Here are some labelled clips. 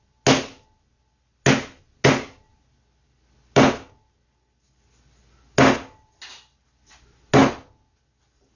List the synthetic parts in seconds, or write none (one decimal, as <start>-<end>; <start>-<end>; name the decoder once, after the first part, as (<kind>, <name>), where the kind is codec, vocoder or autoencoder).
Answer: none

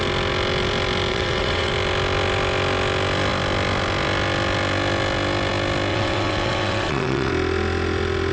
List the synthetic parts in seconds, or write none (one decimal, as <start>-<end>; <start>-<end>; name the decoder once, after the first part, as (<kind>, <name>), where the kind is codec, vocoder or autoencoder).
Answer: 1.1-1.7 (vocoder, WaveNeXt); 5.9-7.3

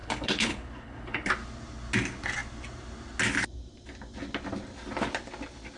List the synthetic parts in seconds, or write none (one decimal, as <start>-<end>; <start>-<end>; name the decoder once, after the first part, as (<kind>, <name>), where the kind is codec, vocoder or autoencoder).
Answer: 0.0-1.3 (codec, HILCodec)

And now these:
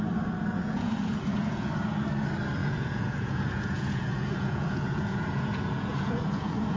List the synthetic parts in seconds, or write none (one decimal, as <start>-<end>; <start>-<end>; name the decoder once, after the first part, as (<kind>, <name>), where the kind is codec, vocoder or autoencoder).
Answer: 0.5-1.7 (vocoder, Vocos); 2.6-6.8

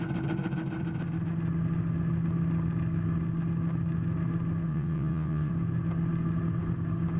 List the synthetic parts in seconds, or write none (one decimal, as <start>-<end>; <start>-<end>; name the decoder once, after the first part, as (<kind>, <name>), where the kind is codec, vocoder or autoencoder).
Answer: 4.7-5.5 (vocoder, WaveNeXt)